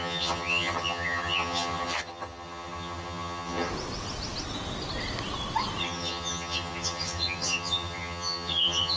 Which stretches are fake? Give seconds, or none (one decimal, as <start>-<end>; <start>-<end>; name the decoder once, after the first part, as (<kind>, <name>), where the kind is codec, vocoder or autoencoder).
0.0-3.7 (vocoder, HiFi-GAN); 5.8-9.0